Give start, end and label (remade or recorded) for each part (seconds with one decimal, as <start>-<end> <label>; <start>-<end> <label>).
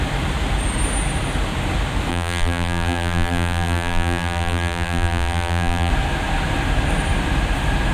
0.0-2.1 recorded; 2.1-5.9 remade; 5.9-7.9 recorded